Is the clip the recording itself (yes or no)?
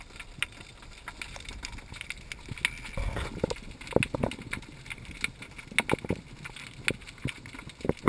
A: yes